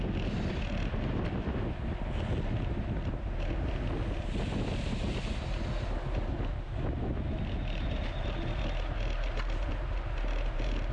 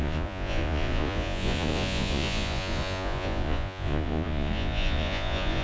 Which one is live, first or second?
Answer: first